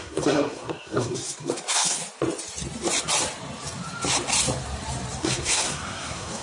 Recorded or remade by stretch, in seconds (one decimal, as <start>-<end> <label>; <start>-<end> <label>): 0.0-2.0 remade; 2.0-5.2 recorded; 5.2-6.4 remade